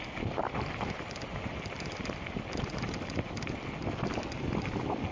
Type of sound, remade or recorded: recorded